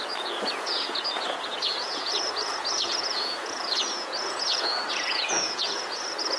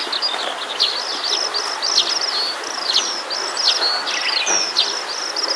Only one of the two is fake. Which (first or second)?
first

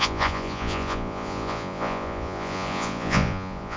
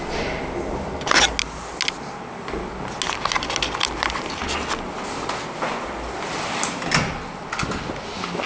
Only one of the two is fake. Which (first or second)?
first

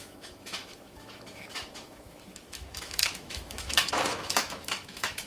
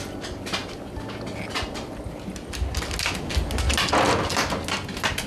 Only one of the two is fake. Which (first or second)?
first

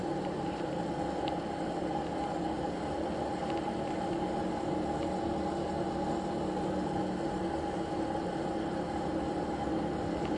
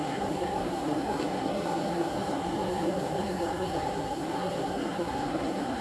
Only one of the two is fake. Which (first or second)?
second